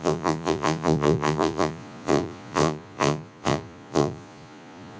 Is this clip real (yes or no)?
no